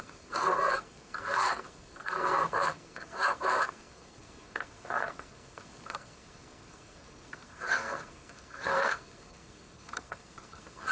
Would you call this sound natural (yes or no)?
no